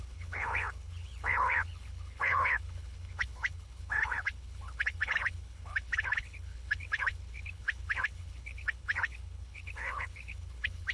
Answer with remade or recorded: remade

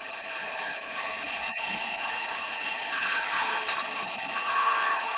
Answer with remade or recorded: remade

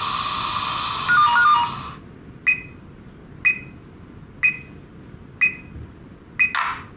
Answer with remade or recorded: recorded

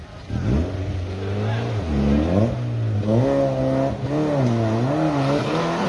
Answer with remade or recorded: recorded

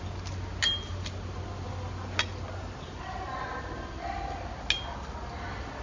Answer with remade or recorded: recorded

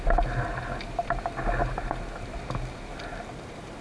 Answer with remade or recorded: recorded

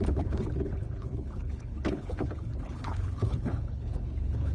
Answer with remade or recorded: remade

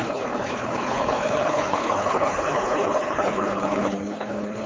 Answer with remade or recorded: remade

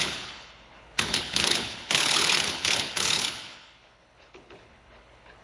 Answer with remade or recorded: remade